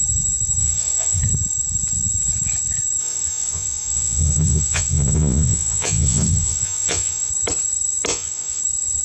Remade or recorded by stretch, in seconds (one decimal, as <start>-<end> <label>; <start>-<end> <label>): 0.0-0.6 recorded; 0.6-1.2 remade; 1.2-3.0 recorded; 3.0-7.3 remade; 7.3-8.1 recorded; 8.1-8.6 remade; 8.6-9.0 recorded